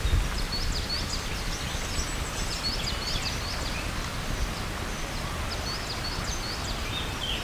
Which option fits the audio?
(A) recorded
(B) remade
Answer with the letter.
A